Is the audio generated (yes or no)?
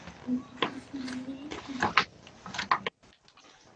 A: no